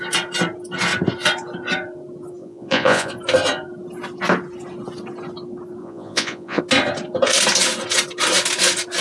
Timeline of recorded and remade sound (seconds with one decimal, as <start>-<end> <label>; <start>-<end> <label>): 0.0-2.4 recorded; 2.4-3.1 remade; 3.1-5.8 recorded; 5.8-6.6 remade; 6.6-9.0 recorded